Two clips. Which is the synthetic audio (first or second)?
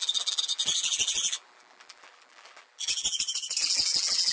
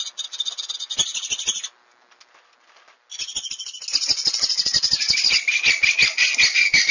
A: first